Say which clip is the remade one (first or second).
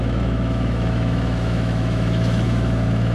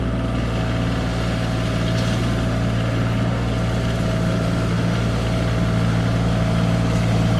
first